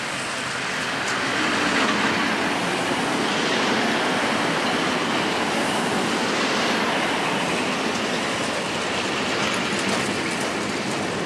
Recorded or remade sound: recorded